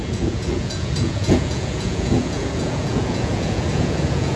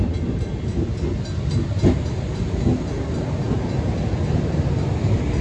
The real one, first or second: second